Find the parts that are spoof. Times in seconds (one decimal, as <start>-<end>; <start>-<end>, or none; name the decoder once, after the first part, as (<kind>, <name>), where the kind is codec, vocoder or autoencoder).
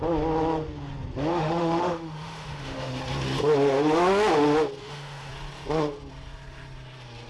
1.3-2.9 (autoencoder, DAC-VAE); 4.8-5.3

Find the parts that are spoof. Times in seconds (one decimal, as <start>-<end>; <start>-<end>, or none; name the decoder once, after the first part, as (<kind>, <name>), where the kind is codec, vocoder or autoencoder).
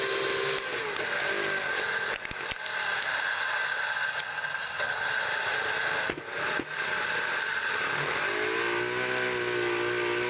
none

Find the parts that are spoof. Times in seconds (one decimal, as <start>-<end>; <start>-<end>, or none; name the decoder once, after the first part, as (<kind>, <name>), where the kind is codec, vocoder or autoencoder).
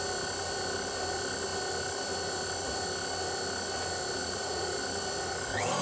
4.2-4.8 (vocoder, Vocos)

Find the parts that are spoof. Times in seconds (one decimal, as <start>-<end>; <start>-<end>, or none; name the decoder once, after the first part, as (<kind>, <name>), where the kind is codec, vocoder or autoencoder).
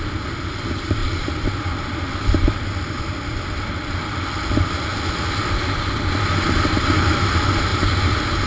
0.0-1.0 (vocoder, BigVGAN v2); 1.6-4.9; 6.4-7.7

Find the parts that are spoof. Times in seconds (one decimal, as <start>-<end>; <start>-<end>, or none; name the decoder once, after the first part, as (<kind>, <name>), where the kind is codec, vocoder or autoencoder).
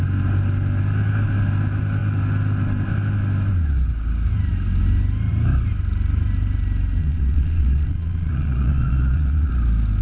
7.0-9.5 (vocoder, Vocos)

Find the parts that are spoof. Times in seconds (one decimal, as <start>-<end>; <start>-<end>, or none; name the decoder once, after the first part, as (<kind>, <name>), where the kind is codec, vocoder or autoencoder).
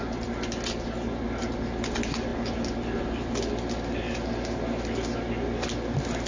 none